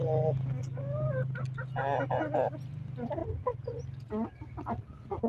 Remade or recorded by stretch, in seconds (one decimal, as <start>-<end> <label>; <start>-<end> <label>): 0.0-5.3 recorded